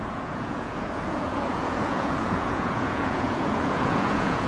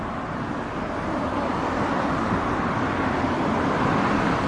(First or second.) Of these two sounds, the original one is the second